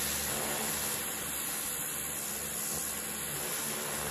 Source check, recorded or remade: recorded